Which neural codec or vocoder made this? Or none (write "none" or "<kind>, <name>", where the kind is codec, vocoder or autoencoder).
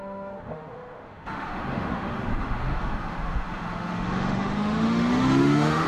autoencoder, DAC-VAE